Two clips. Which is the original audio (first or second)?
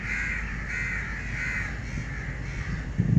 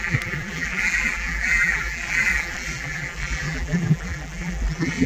first